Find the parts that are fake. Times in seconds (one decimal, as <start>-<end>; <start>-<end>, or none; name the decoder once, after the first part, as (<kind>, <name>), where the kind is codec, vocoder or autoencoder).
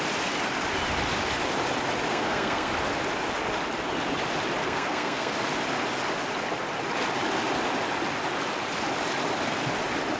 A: 2.1-2.7 (codec, SNAC); 4.6-5.3